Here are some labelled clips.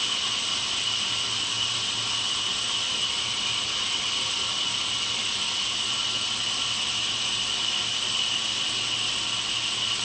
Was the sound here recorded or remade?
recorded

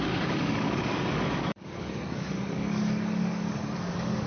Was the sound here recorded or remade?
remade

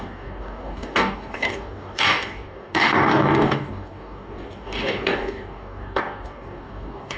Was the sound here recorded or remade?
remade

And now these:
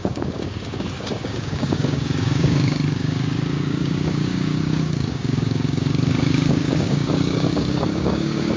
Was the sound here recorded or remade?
remade